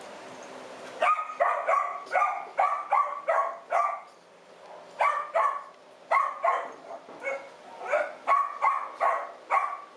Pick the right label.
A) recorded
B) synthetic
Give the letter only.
A